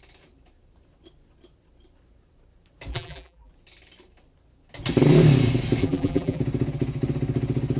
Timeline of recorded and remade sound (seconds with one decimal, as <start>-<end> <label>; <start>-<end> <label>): 0.0-2.9 recorded; 2.9-3.5 remade; 3.5-5.8 recorded; 5.8-6.4 remade; 6.4-7.8 recorded